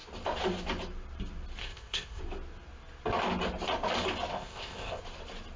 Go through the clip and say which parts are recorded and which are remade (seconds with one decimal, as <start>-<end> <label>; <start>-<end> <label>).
0.0-1.6 recorded; 1.6-2.2 remade; 2.2-4.3 recorded; 4.3-5.0 remade; 5.0-5.6 recorded